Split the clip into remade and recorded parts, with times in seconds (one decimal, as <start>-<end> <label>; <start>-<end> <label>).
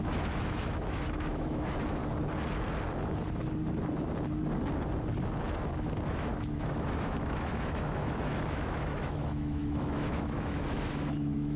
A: 0.0-2.0 remade; 2.0-6.1 recorded; 6.1-11.6 remade